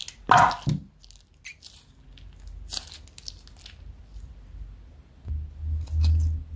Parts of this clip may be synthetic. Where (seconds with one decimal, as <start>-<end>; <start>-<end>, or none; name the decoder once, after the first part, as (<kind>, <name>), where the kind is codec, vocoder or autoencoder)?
none